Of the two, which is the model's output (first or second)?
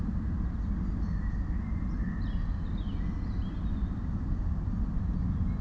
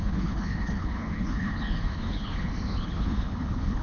second